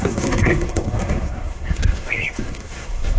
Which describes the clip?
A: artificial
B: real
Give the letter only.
A